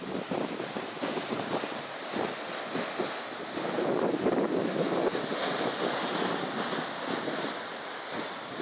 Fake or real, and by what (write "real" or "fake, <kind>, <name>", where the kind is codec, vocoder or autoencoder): real